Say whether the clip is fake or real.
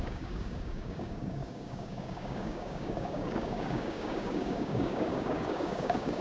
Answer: fake